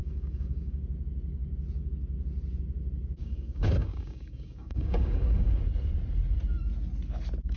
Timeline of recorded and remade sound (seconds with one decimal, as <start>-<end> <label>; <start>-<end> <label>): 0.0-0.8 remade; 0.8-3.2 recorded; 3.2-5.6 remade; 5.6-7.6 recorded